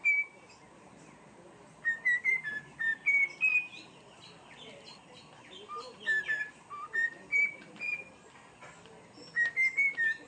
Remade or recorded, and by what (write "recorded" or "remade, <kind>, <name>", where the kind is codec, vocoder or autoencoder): recorded